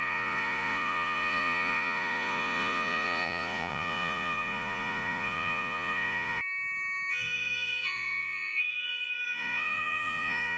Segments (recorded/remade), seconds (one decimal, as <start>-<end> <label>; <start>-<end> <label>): 0.0-6.4 remade; 6.4-7.1 recorded; 7.1-10.6 remade